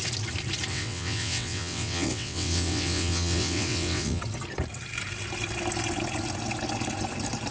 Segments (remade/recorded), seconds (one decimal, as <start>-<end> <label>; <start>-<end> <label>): 0.0-0.7 recorded; 0.7-4.2 remade; 4.2-7.5 recorded